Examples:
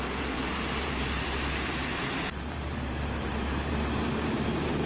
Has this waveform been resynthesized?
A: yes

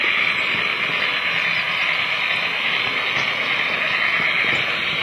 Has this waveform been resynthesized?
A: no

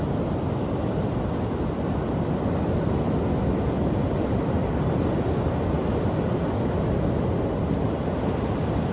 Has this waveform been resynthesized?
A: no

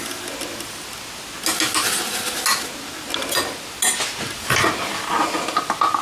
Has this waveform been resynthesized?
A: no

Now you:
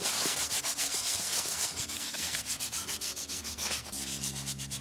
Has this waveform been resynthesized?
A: yes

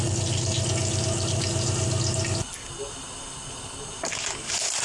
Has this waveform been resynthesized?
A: no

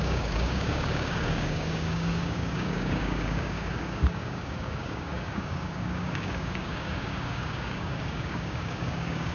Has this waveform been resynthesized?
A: yes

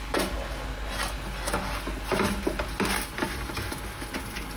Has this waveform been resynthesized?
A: no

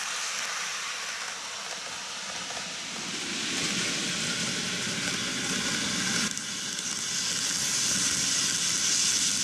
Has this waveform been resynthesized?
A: no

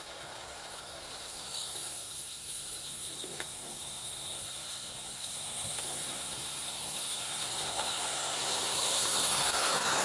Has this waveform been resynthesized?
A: yes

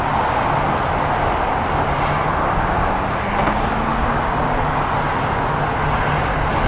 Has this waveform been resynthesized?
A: no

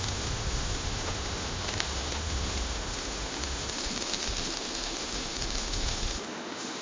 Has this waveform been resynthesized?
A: yes